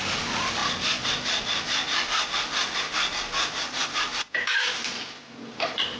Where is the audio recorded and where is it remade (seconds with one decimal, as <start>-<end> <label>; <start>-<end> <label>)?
0.0-6.0 recorded